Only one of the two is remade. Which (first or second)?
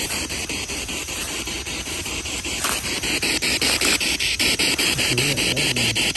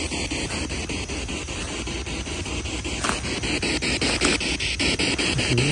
first